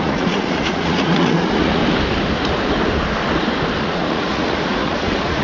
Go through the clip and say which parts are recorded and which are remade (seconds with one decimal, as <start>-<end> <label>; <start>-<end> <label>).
0.0-1.8 remade; 1.8-3.8 recorded; 3.8-5.4 remade